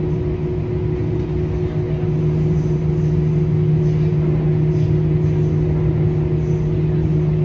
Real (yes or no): yes